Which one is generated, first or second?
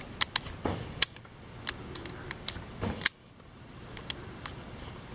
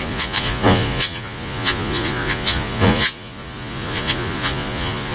second